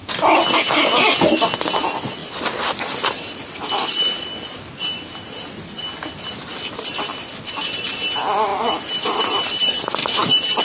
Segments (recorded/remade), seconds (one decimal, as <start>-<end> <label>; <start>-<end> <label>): 0.0-0.5 remade; 0.5-10.6 recorded